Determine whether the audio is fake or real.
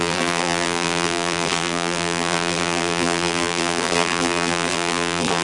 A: fake